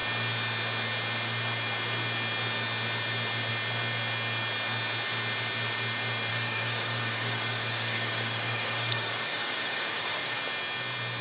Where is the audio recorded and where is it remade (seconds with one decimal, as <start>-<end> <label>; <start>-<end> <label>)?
0.0-6.3 recorded; 6.3-10.4 remade; 10.4-11.2 recorded